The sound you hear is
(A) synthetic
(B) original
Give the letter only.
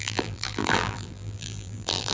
A